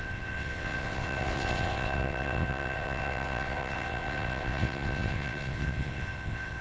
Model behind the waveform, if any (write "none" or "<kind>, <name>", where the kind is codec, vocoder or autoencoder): vocoder, WaveNeXt